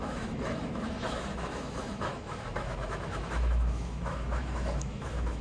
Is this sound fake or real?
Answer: fake